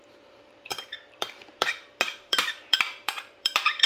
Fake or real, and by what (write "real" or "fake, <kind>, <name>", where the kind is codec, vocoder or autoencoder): fake, vocoder, BigVGAN v2